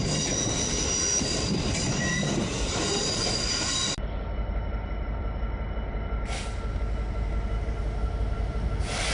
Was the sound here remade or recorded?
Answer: recorded